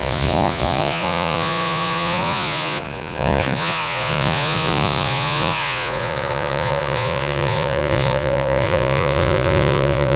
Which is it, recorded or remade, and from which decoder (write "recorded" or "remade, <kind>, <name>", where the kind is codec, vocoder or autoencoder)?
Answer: remade, vocoder, Vocos